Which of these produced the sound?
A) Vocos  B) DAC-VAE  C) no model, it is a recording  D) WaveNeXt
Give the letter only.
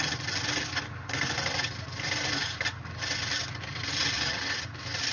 C